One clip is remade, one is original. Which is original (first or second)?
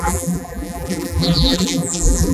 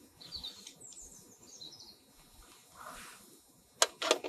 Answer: second